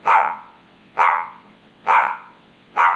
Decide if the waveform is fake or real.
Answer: fake